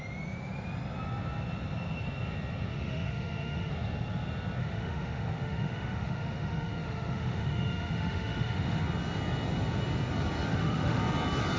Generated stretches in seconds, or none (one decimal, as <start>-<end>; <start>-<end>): 2.7-3.7; 4.6-8.8; 10.5-11.0